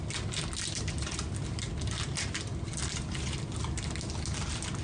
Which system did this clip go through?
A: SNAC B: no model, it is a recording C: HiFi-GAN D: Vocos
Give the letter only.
B